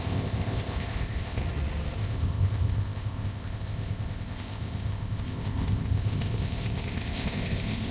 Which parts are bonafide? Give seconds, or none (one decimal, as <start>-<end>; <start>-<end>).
1.4-2.0